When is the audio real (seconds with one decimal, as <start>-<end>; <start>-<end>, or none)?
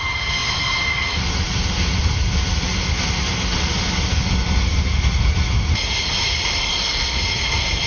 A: 0.0-7.9